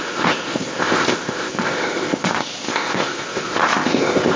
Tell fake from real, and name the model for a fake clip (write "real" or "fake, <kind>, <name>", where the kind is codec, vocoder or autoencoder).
fake, codec, ZipCodec